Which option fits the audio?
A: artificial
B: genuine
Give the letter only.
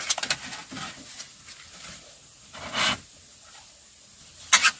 B